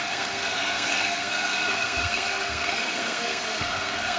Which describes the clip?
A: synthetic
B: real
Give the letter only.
A